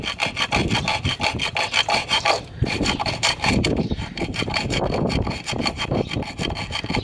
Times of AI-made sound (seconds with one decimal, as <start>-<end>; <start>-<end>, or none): 2.0-6.2